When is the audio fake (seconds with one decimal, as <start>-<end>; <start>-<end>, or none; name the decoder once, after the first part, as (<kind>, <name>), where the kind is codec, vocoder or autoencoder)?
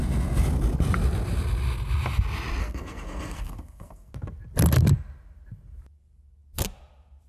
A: 2.6-4.1 (codec, SNAC)